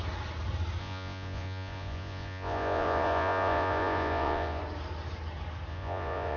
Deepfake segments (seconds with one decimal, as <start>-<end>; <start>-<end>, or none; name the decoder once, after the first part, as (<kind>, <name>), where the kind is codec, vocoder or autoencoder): 0.8-4.6 (vocoder, Vocos); 5.7-6.4